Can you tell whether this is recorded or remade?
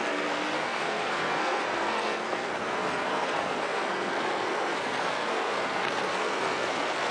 remade